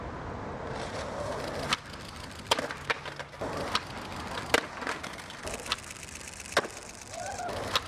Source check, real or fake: real